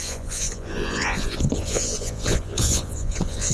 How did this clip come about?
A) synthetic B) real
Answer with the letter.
A